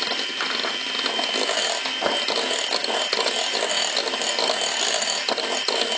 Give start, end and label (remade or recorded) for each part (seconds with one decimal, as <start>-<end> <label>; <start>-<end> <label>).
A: 0.0-6.0 recorded